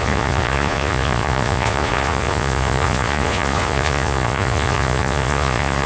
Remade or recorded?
remade